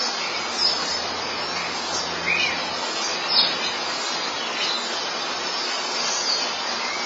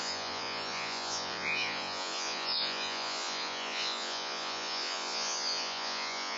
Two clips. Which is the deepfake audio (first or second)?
second